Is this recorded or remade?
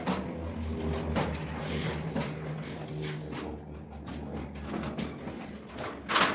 recorded